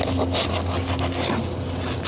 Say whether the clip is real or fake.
real